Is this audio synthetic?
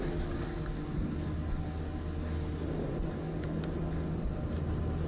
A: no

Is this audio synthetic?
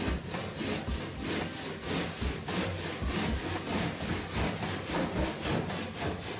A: no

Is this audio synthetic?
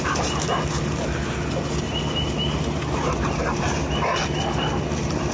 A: no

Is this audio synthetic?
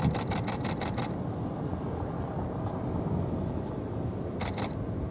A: no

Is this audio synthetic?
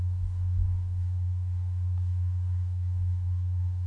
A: yes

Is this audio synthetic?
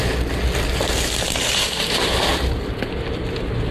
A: no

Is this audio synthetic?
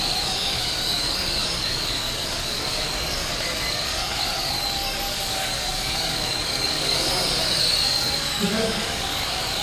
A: yes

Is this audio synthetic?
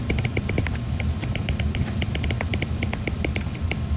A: no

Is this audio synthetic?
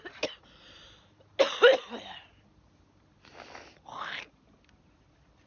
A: no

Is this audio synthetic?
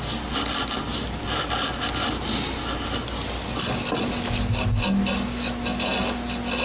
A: no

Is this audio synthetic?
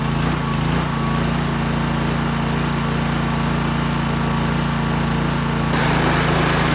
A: no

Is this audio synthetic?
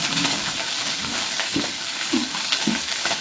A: yes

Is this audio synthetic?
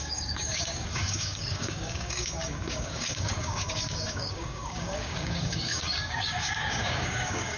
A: yes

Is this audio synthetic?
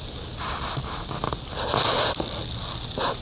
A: no